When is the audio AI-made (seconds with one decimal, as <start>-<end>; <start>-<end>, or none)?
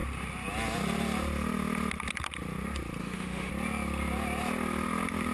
3.0-3.5